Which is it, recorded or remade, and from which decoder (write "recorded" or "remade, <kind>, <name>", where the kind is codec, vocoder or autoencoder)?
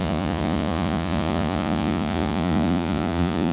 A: remade, vocoder, Vocos